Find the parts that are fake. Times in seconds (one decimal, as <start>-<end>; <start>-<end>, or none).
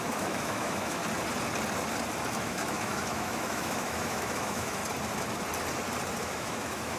0.0-1.0; 2.4-4.8; 6.2-7.0